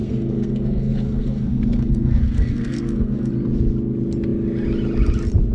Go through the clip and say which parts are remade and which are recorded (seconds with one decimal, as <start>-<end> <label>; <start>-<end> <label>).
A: 0.0-3.3 remade; 3.3-5.5 recorded

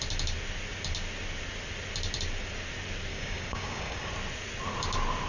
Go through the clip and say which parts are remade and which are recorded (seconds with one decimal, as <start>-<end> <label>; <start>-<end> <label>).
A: 0.0-3.1 recorded; 3.1-4.1 remade; 4.1-5.3 recorded